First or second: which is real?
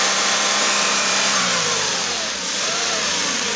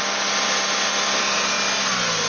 second